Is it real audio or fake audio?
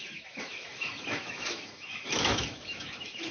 fake